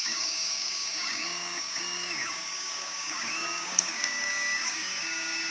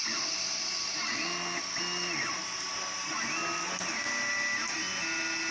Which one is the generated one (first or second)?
first